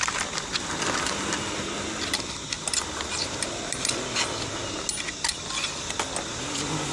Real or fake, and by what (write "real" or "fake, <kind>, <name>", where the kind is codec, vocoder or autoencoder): real